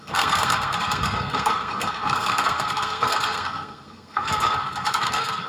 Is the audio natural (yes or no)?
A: no